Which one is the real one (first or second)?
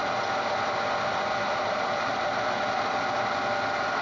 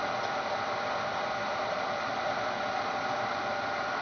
first